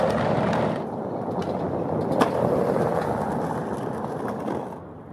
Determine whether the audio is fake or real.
real